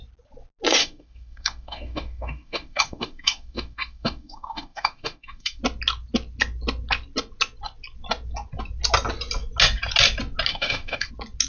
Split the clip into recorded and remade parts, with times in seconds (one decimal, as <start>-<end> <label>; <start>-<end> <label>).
0.0-0.8 recorded; 0.8-5.6 remade; 5.6-10.5 recorded; 10.5-11.1 remade; 11.1-11.5 recorded